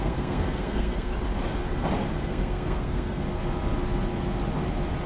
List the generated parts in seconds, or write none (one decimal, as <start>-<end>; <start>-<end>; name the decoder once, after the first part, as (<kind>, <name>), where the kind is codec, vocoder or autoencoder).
0.0-1.1 (codec, SNAC); 2.2-3.2